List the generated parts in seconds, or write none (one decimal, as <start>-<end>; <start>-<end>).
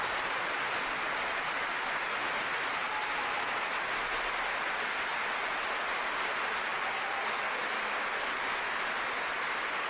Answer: none